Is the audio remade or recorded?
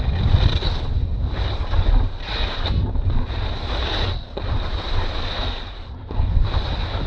recorded